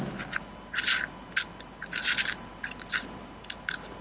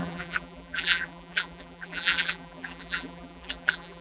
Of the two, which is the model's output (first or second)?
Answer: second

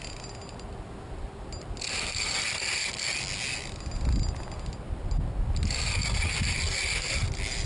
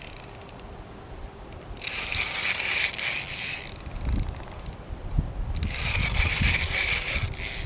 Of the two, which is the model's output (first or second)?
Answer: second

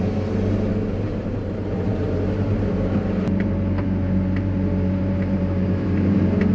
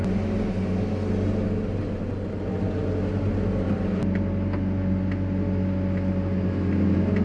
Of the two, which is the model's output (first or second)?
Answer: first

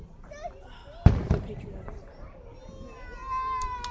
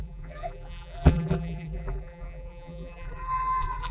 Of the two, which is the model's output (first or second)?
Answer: second